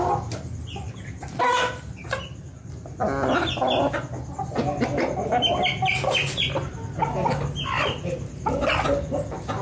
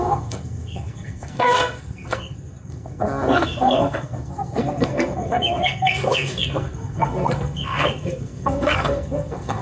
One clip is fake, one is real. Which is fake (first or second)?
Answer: second